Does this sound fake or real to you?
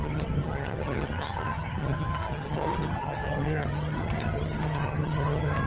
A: fake